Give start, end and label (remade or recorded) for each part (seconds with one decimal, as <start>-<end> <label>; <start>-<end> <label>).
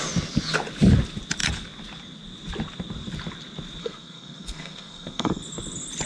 0.0-3.8 recorded; 3.8-5.4 remade; 5.4-6.1 recorded